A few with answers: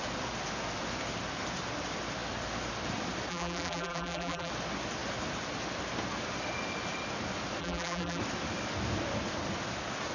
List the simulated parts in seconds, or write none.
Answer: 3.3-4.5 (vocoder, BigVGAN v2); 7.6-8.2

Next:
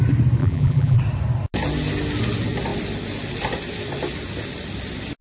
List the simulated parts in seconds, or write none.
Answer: 0.4-1.0 (vocoder, BigVGAN v2)